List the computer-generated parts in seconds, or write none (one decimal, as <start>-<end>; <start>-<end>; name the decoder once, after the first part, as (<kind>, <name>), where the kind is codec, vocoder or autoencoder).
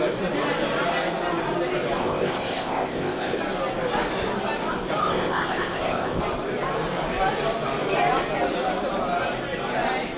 2.0-3.4 (codec, ZipCodec); 5.0-6.2